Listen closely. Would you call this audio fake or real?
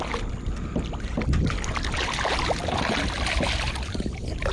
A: real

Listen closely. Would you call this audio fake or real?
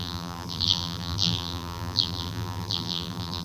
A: fake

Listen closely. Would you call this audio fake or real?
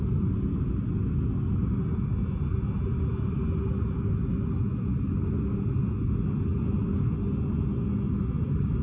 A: real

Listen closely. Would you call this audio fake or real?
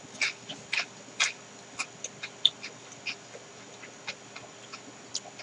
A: real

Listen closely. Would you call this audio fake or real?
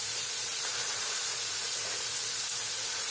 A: fake